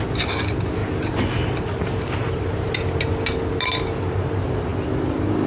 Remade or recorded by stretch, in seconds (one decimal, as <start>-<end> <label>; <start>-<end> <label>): 0.0-5.5 recorded